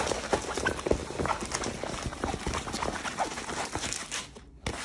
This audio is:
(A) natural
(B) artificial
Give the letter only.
A